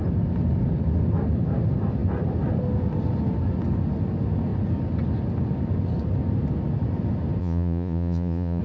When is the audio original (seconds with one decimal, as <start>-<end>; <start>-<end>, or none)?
0.0-7.4